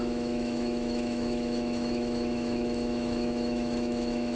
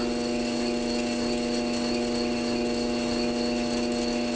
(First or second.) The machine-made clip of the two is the first